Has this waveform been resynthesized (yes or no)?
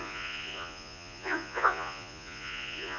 yes